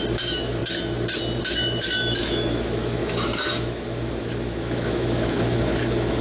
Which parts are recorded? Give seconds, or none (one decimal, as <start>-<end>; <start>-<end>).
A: 0.6-1.4